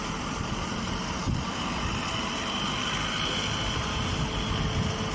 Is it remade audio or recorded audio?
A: recorded